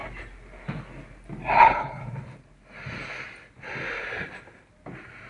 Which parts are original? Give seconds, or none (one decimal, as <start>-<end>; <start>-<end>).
0.0-1.6; 2.0-5.3